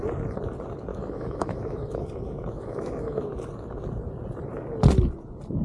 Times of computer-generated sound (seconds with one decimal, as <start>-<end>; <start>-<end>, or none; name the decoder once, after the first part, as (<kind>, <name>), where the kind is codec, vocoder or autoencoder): 0.9-3.3 (autoencoder, DAC-VAE)